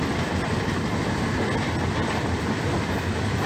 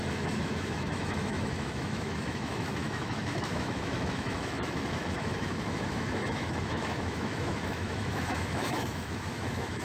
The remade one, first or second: second